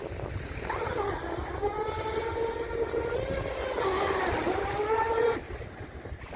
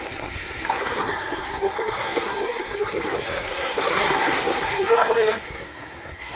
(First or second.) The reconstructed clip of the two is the second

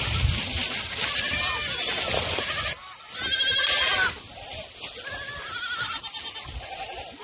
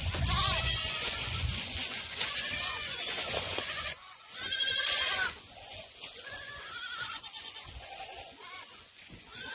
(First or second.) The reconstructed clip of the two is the second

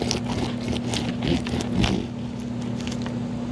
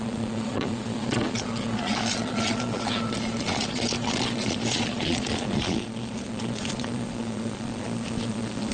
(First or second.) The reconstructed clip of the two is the second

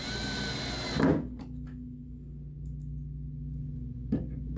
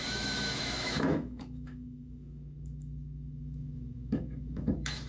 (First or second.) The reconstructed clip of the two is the second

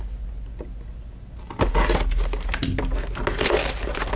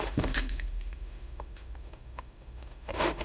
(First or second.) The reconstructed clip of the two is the second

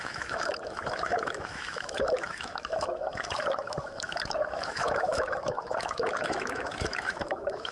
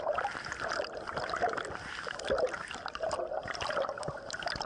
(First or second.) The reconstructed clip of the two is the first